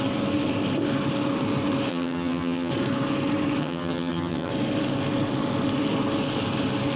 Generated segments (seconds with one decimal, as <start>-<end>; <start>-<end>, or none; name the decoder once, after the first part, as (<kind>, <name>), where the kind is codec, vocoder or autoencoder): 1.9-2.7 (vocoder, HiFi-GAN); 3.6-4.5